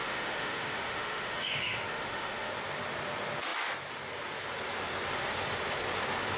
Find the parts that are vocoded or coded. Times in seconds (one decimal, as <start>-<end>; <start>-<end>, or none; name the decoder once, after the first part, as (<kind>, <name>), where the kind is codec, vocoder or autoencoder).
0.0-2.5 (autoencoder, DAC-VAE)